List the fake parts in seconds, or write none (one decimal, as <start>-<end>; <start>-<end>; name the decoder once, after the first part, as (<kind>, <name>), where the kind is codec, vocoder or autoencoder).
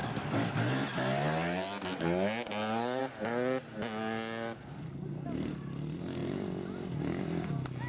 none